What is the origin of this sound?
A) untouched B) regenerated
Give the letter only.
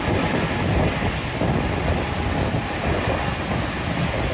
A